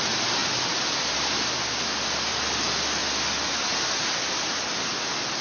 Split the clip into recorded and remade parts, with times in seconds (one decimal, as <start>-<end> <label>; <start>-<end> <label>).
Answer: 0.0-5.4 recorded